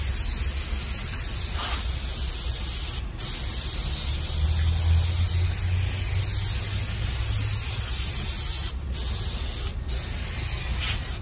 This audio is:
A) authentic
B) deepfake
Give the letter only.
A